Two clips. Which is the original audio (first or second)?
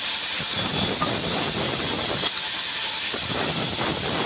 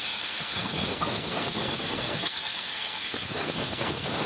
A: first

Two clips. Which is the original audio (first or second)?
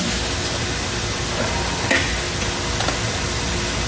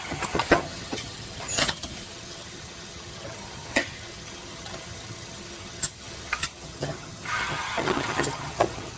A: first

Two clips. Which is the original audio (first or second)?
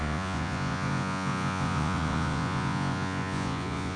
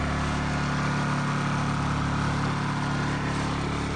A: second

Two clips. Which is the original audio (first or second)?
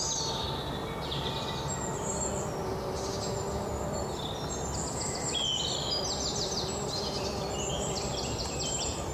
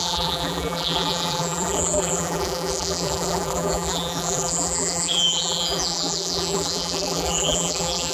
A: first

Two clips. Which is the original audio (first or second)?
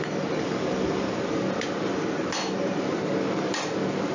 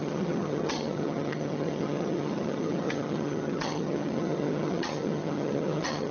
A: first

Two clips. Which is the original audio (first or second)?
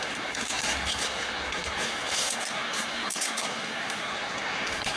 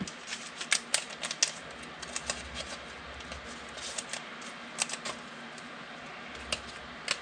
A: second